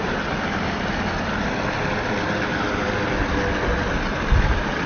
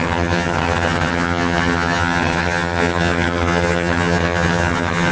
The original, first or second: first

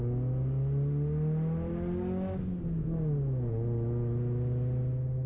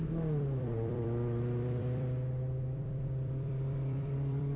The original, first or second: first